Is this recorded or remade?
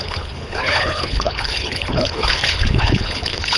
remade